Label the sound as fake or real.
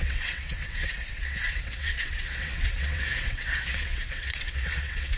fake